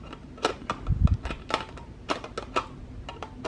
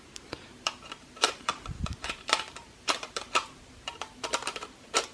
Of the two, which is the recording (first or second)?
first